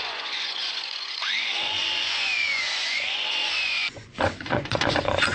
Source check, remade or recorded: remade